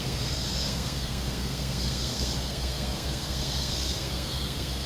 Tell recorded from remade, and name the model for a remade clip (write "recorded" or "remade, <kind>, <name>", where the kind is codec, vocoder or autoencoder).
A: remade, codec, SNAC